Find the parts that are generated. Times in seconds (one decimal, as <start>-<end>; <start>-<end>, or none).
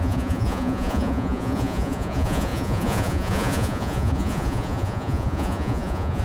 0.0-6.2